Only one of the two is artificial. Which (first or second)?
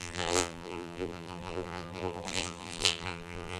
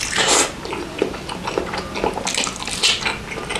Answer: first